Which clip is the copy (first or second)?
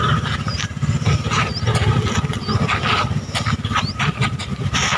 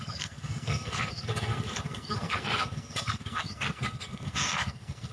second